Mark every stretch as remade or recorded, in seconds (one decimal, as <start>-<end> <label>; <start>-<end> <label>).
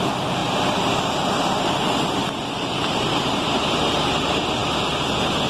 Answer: 0.0-5.5 recorded